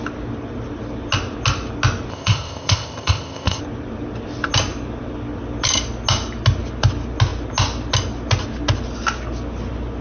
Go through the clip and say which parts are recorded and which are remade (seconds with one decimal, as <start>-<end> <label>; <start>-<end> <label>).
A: 0.0-2.1 recorded; 2.1-3.6 remade; 3.6-10.0 recorded